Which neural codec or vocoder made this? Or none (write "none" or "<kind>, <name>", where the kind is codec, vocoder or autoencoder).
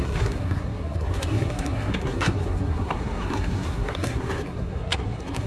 codec, SNAC